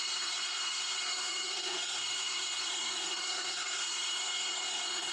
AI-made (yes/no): yes